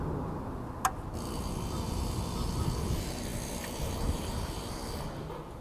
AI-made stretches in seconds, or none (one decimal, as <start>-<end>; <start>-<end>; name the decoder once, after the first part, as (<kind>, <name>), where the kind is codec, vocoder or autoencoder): none